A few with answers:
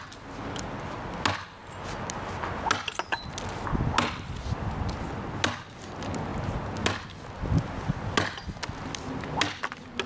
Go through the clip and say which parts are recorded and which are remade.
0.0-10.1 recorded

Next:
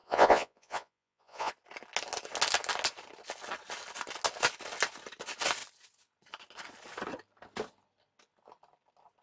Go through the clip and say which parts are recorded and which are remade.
0.0-1.5 remade; 1.5-9.2 recorded

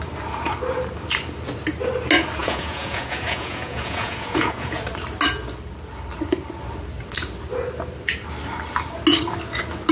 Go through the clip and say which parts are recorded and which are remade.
0.0-2.4 recorded; 2.4-4.8 remade; 4.8-9.9 recorded

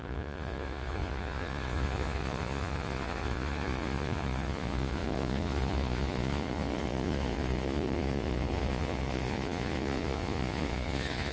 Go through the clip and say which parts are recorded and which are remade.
0.0-11.3 remade

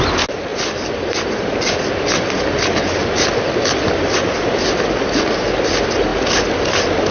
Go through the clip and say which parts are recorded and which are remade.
0.0-7.1 recorded

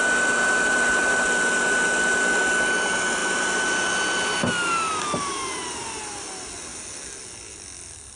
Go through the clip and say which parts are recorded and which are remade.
0.0-8.2 recorded

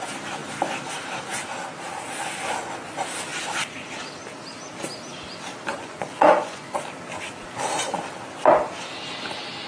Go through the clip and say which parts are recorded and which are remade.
0.0-5.7 recorded; 5.7-6.8 remade; 6.8-9.7 recorded

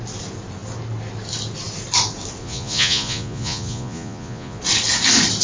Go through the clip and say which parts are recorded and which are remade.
0.0-2.4 recorded; 2.4-4.6 remade; 4.6-5.4 recorded